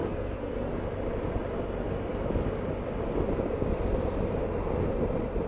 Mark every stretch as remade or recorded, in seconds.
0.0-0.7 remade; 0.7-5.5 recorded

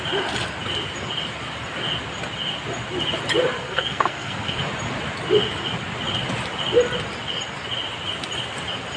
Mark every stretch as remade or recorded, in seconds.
0.0-3.6 recorded; 3.6-4.6 remade; 4.6-9.0 recorded

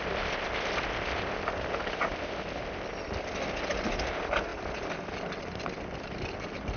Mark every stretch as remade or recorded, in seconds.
0.0-6.8 recorded

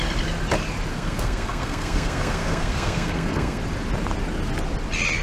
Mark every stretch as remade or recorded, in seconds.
0.0-0.9 recorded; 0.9-3.6 remade; 3.6-5.2 recorded

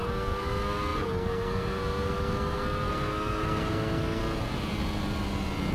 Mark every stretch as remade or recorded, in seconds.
0.0-4.2 remade; 4.2-5.7 recorded